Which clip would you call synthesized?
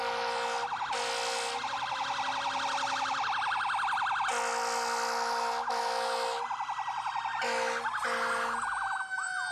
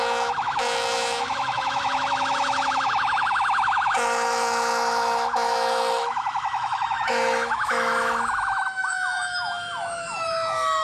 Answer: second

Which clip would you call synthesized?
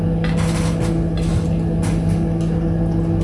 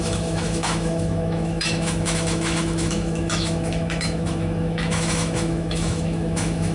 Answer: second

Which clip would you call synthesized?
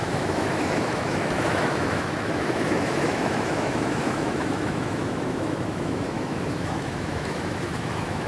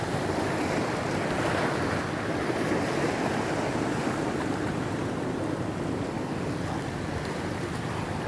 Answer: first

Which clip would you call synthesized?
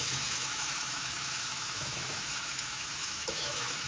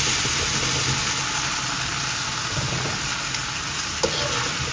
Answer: first